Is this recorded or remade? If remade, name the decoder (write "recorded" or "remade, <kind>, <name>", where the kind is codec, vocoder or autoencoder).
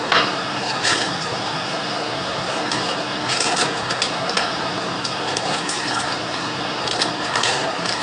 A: remade, codec, SNAC